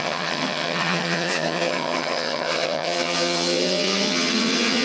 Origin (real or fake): fake